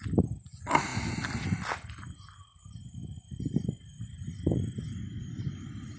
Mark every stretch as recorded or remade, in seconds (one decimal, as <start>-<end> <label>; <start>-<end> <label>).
0.0-6.0 recorded